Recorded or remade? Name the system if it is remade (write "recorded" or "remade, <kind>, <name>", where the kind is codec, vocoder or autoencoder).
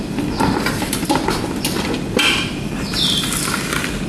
remade, vocoder, BigVGAN v2